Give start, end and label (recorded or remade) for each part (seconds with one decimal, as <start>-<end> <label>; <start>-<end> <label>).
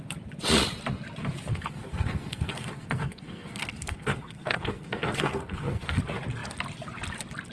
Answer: 0.0-1.5 recorded; 1.5-6.0 remade; 6.0-7.5 recorded